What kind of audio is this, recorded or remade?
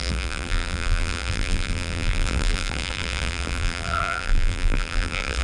remade